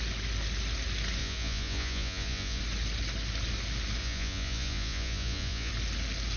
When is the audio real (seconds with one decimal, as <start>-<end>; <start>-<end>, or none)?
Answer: 0.0-1.2; 2.6-4.0; 5.7-6.4